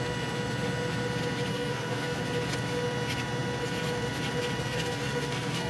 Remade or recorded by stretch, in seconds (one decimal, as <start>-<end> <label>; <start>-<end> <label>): 0.0-1.5 recorded; 1.5-2.2 remade; 2.2-4.6 recorded; 4.6-5.7 remade